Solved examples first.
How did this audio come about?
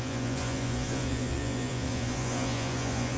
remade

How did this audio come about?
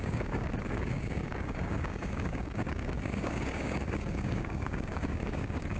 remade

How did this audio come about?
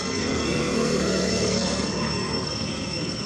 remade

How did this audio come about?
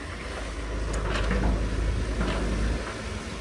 recorded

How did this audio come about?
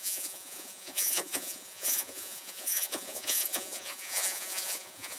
remade